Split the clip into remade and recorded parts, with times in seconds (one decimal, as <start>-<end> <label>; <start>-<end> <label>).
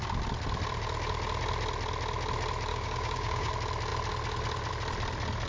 0.0-2.7 recorded; 2.7-3.5 remade; 3.5-5.5 recorded